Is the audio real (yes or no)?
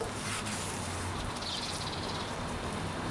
yes